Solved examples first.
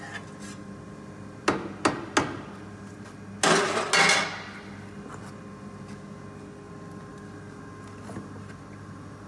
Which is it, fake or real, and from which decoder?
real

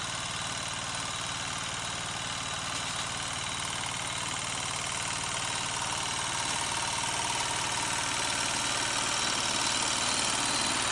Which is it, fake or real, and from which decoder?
real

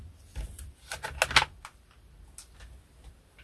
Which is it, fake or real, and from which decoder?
real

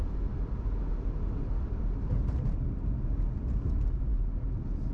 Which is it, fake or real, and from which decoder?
real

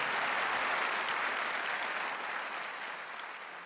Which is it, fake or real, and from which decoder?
real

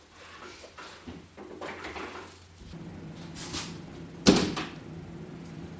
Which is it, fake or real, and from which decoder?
real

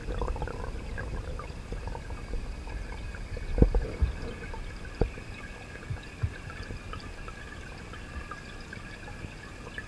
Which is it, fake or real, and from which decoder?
real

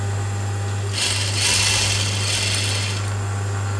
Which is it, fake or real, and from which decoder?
real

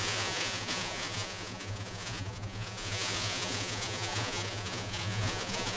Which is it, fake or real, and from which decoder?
fake, vocoder, Vocos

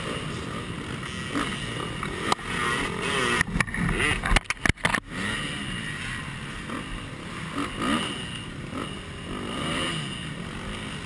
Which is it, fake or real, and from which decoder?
real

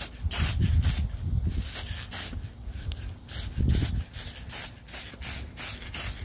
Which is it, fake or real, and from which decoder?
real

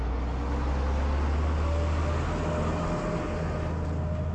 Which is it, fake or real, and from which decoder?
real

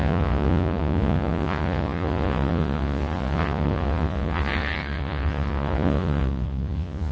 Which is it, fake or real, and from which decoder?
fake, vocoder, Vocos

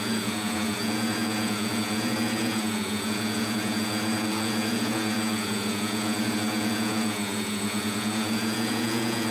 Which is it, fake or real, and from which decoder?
fake, vocoder, Vocos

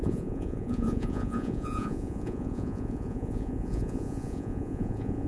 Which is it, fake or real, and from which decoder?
fake, vocoder, Vocos